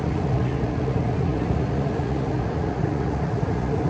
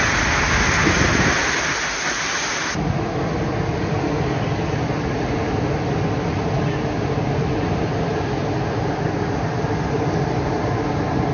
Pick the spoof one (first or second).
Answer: first